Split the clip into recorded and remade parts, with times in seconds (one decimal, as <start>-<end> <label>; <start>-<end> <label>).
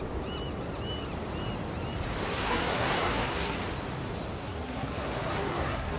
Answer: 0.0-2.3 recorded; 2.3-3.6 remade; 3.6-4.4 recorded; 4.4-6.0 remade